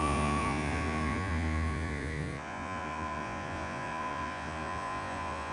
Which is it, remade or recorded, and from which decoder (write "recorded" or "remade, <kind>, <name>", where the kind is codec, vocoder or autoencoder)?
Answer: remade, vocoder, Vocos